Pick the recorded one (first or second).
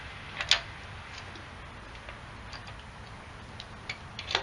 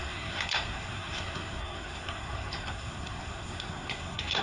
first